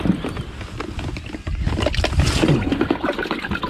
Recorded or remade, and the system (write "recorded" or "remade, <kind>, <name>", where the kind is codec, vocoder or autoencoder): recorded